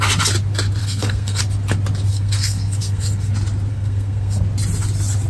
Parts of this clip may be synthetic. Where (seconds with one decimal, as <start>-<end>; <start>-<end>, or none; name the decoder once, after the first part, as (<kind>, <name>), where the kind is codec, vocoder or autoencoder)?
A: 0.8-1.4 (codec, SNAC); 2.1-3.3; 3.7-4.4